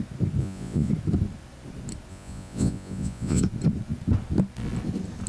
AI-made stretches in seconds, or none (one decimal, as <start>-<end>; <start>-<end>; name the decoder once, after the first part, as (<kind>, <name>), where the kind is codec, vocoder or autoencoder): 0.4-0.9 (vocoder, Vocos); 2.1-3.4